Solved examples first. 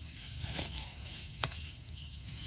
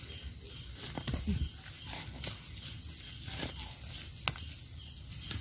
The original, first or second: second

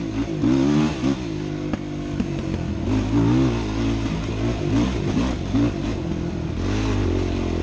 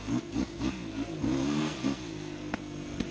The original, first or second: first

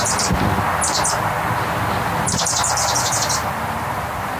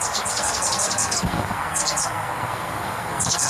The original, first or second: first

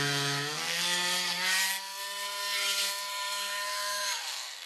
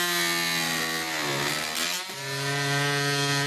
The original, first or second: second